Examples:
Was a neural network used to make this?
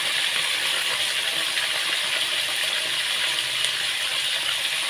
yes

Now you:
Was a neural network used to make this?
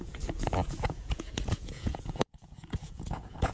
yes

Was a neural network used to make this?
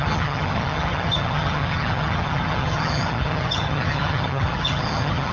yes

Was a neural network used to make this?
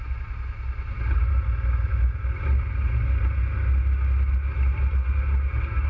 no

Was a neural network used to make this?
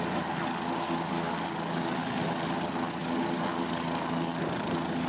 no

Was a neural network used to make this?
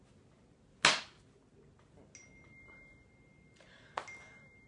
no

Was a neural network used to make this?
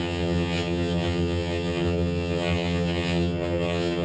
yes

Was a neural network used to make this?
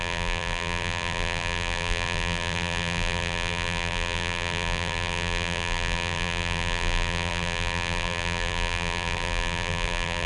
yes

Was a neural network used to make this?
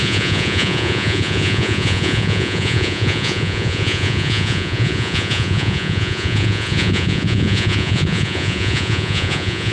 yes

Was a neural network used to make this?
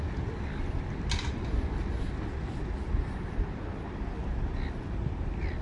no